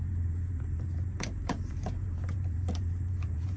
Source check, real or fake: fake